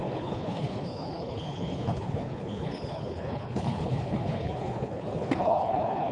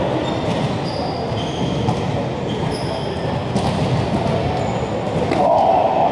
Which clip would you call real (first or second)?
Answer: second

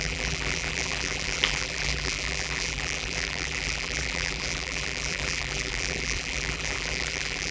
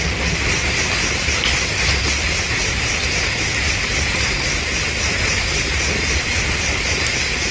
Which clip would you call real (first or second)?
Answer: second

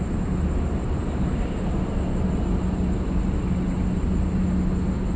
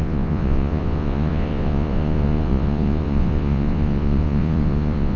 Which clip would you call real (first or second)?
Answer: first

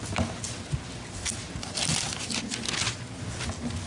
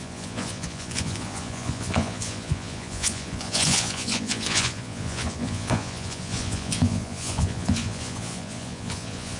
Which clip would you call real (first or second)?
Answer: first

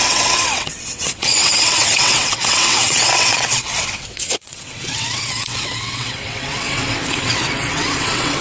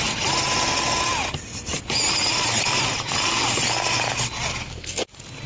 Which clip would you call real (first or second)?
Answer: second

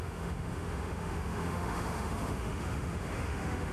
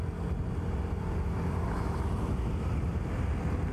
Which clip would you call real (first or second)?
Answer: second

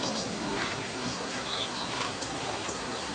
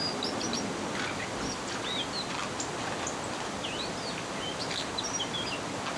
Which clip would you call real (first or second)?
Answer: second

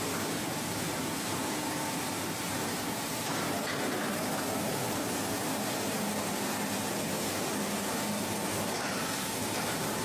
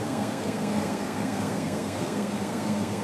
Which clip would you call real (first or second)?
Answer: first